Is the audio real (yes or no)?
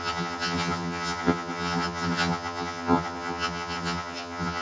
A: no